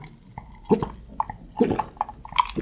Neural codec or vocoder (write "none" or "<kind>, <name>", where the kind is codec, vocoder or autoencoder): none